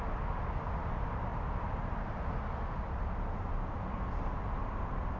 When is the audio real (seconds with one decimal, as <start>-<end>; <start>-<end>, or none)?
0.0-5.2